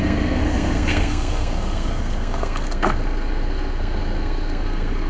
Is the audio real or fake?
fake